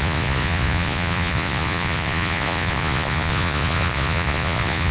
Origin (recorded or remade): remade